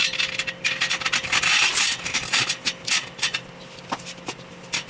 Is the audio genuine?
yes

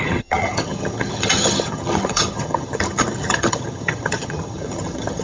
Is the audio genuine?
no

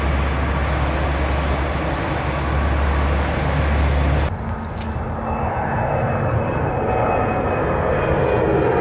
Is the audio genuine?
yes